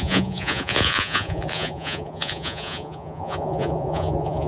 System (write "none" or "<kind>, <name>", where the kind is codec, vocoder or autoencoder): vocoder, Vocos